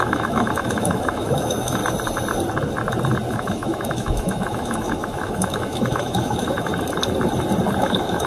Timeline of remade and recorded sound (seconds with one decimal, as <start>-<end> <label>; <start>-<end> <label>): 0.0-1.8 remade; 1.8-3.3 recorded; 3.3-6.7 remade; 6.7-7.8 recorded; 7.8-8.3 remade